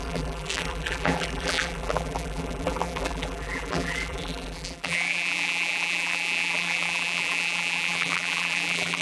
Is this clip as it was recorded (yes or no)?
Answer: no